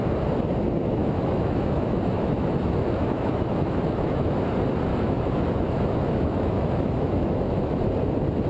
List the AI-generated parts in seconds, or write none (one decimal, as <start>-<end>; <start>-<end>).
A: 1.0-4.4; 4.9-7.7